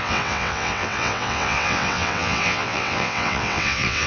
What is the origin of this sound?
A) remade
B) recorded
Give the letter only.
A